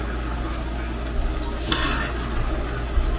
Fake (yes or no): no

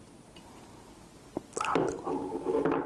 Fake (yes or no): no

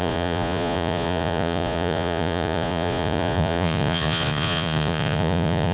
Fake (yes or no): yes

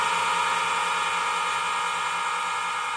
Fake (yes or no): no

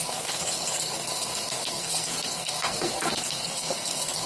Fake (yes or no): yes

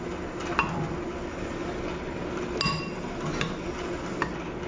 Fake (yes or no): no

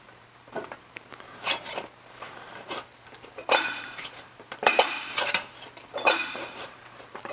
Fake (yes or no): yes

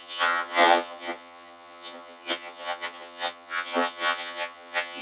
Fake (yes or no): yes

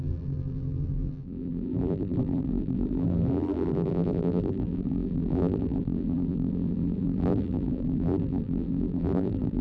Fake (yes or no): yes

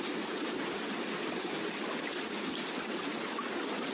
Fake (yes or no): no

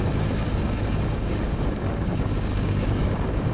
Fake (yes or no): yes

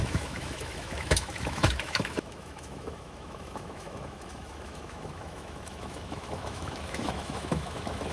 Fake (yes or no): yes